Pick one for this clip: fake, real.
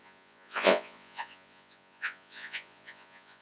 fake